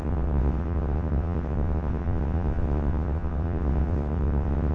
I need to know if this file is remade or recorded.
remade